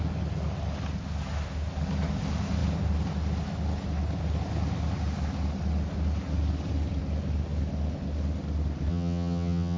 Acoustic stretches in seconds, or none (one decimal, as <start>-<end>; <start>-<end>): 0.0-8.9